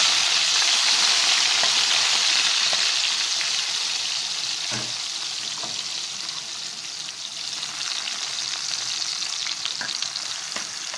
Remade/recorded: recorded